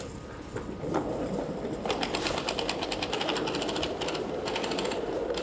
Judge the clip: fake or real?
fake